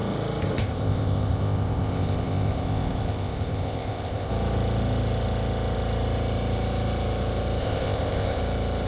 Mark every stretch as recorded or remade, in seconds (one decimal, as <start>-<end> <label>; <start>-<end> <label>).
0.0-0.6 recorded; 0.6-4.3 remade; 4.3-7.6 recorded; 7.6-8.4 remade; 8.4-8.9 recorded